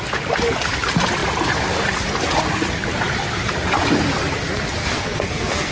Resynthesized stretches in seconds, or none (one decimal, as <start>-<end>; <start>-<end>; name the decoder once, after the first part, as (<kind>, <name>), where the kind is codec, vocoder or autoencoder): 4.8-5.7 (codec, SNAC)